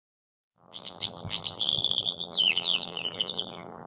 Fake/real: fake